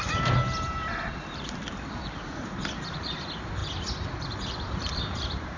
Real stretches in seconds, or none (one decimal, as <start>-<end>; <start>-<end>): 3.6-4.2